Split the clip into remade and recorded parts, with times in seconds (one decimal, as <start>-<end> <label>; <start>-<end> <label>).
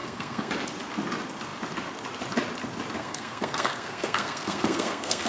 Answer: 0.0-0.5 remade; 0.5-3.0 recorded; 3.0-5.3 remade